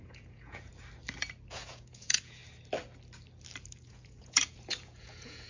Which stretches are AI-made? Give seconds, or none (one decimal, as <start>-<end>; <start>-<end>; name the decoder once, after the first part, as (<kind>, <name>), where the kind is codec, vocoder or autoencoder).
0.0-0.7 (vocoder, Vocos); 1.5-2.4; 3.9-5.5